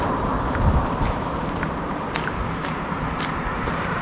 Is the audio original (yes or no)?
no